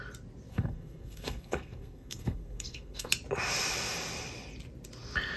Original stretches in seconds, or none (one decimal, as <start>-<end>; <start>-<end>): 0.0-0.5; 3.1-5.4